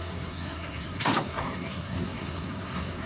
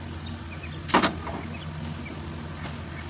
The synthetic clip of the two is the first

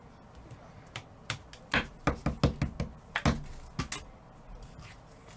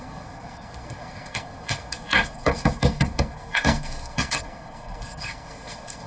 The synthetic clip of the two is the second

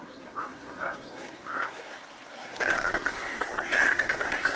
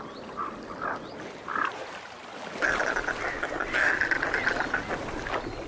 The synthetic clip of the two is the first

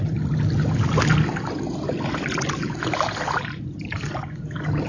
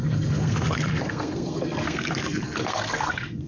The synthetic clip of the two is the second